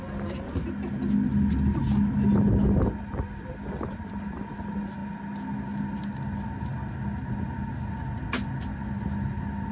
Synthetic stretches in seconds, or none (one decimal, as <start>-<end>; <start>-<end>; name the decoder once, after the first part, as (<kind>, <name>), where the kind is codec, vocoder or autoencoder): none